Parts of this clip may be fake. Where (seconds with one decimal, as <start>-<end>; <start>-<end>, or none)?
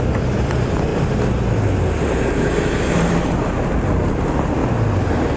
none